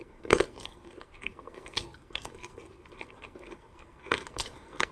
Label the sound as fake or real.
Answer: fake